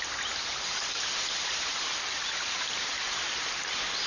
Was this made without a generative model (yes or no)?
yes